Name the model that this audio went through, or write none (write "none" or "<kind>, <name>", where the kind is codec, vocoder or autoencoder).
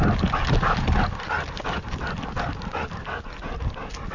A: none